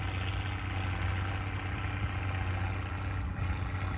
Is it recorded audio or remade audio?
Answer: recorded